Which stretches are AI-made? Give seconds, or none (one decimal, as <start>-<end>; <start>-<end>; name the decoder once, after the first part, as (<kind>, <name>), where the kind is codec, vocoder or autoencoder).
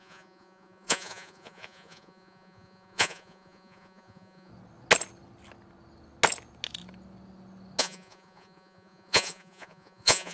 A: 0.0-4.5 (vocoder, Vocos); 7.8-10.3